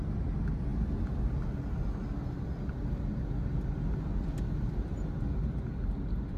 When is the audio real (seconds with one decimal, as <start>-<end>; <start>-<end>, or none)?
0.0-6.4